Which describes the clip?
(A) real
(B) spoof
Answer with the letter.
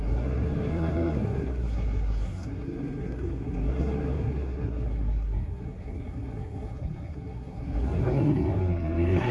B